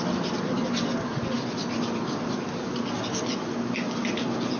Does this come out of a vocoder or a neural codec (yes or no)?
no